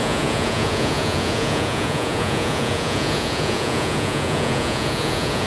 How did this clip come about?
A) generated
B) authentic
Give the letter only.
A